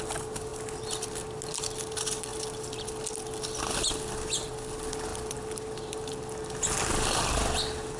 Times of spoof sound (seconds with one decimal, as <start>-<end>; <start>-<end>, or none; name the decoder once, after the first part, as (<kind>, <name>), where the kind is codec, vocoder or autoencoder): none